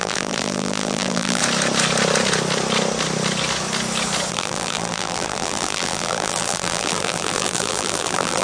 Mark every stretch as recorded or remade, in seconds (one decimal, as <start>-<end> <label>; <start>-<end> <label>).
0.0-1.4 remade; 1.4-4.3 recorded; 4.3-8.4 remade